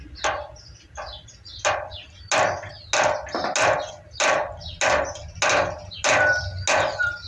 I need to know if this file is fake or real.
real